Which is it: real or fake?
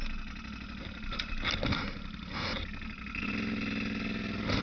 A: real